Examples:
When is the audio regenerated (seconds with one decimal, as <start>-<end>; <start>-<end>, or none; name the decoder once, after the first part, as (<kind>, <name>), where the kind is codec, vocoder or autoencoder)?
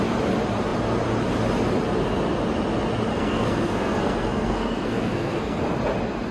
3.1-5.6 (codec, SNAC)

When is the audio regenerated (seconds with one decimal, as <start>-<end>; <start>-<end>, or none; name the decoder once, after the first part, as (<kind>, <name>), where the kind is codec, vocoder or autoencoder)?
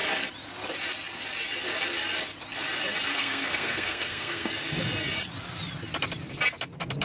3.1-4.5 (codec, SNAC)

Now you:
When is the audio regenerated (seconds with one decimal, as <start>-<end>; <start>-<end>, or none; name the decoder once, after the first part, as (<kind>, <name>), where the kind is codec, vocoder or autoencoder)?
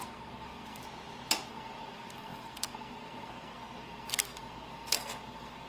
0.0-0.8 (codec, SNAC); 1.5-5.7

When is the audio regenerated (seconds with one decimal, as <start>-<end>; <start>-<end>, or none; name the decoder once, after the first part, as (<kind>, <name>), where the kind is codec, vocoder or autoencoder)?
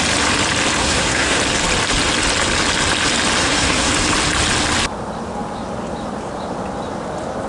0.8-1.4 (codec, SNAC); 3.4-3.9